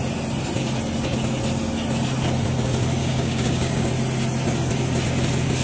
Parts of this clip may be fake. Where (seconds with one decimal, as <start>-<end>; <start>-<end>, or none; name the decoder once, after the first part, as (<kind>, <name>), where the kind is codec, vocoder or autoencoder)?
3.0-3.9 (codec, DAC)